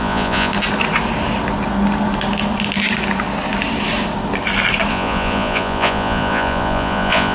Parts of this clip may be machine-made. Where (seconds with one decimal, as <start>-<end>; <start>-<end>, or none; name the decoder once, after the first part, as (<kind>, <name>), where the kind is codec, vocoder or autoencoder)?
0.0-0.5 (vocoder, Vocos); 4.9-7.3